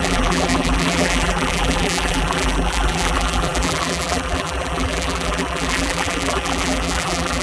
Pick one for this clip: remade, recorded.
remade